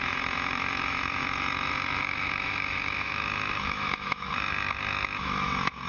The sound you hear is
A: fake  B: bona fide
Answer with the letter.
A